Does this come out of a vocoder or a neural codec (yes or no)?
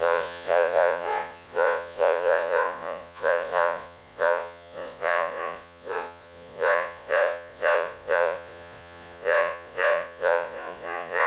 yes